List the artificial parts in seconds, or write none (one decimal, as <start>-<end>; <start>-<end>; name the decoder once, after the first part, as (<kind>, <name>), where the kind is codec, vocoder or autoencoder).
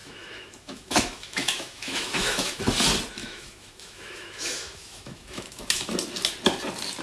0.0-2.6 (autoencoder, DAC-VAE); 3.2-5.9